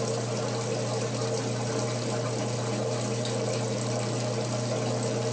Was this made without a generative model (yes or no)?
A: yes